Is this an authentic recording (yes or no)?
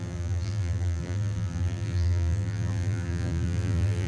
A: no